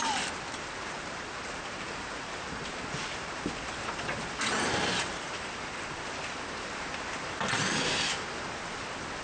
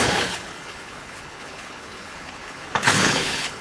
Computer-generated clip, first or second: second